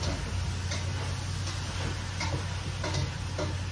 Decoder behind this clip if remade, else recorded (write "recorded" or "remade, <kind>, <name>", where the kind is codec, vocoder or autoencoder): recorded